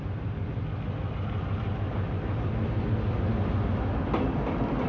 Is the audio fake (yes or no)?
no